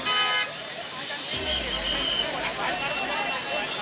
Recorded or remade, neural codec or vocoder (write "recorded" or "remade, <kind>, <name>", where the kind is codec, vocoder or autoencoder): recorded